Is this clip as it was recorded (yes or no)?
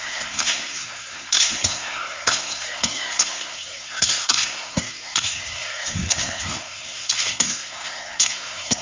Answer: no